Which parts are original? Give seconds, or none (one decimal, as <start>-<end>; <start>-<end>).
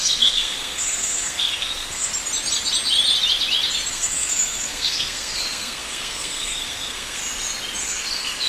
2.1-3.9; 7.2-7.8